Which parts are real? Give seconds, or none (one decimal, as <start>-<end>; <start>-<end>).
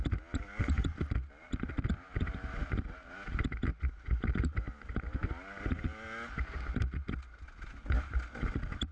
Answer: 0.0-8.9